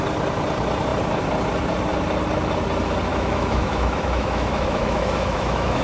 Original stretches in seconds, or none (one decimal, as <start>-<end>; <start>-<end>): 0.0-3.1